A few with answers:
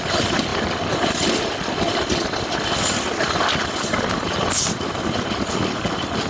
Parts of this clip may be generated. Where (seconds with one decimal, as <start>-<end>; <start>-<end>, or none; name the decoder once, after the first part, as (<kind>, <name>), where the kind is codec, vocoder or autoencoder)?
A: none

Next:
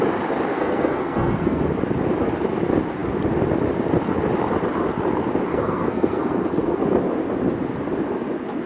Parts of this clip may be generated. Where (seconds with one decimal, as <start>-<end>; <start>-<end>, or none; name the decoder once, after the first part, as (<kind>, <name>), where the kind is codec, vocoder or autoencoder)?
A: 0.5-1.6 (codec, SNAC); 5.5-6.8

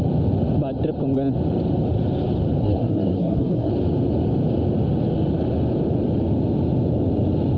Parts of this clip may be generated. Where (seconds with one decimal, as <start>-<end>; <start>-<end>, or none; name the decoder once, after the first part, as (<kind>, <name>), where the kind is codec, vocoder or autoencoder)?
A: 2.6-3.7 (codec, SNAC)

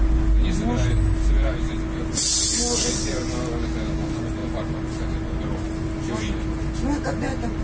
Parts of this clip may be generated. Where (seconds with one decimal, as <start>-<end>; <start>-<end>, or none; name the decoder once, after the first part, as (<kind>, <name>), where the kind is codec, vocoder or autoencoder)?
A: none

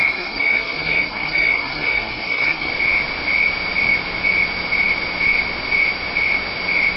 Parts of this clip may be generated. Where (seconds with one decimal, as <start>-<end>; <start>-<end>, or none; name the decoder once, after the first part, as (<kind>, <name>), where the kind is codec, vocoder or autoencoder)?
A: 0.0-2.7 (codec, SNAC)